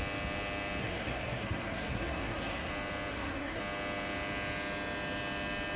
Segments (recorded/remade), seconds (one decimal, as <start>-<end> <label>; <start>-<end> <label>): 0.0-0.8 recorded; 0.8-2.7 remade; 2.7-3.1 recorded; 3.1-3.6 remade; 3.6-5.8 recorded